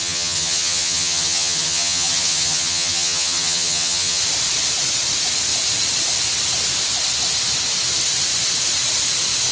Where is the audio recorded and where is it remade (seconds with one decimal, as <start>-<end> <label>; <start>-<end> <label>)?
0.0-4.2 remade; 4.2-9.5 recorded